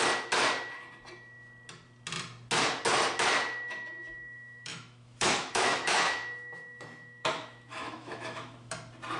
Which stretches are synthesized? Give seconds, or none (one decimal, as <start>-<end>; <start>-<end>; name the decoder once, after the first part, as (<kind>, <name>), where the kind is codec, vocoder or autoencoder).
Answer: 4.0-8.7 (autoencoder, DAC-VAE)